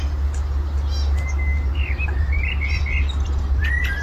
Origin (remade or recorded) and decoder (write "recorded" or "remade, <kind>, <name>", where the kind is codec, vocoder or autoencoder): recorded